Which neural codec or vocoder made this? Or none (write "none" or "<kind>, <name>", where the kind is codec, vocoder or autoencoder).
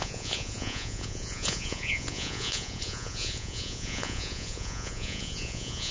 vocoder, Vocos